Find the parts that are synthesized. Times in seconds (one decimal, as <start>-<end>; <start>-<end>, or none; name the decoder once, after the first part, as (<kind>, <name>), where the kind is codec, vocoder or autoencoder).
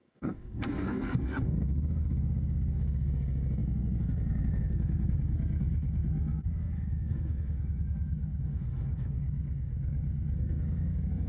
0.0-11.3 (codec, SNAC)